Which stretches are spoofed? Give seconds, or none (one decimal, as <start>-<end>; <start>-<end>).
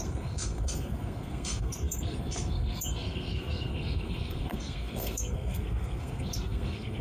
0.0-7.0